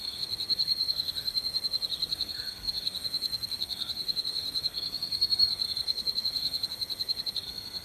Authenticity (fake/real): fake